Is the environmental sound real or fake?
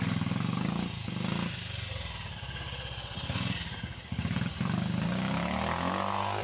real